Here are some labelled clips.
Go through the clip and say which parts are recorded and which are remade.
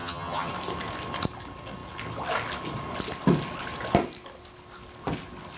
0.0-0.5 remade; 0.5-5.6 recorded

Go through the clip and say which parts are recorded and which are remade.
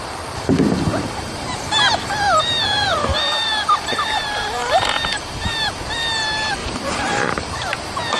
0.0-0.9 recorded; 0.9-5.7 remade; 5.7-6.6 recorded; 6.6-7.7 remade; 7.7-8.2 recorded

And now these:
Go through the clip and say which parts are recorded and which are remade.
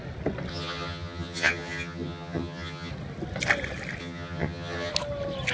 0.0-0.5 recorded; 0.5-2.9 remade; 2.9-4.0 recorded; 4.0-4.9 remade; 4.9-5.5 recorded